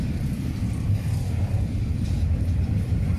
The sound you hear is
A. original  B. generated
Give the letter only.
B